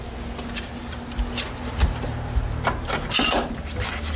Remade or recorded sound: recorded